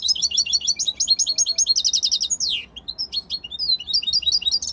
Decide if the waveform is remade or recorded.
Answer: recorded